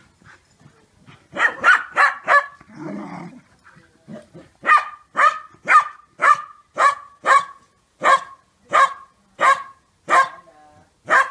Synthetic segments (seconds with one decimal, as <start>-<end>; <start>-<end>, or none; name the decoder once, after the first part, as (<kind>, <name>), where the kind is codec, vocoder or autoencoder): 6.2-9.9 (vocoder, Vocos)